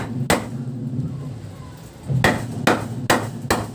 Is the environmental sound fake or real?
real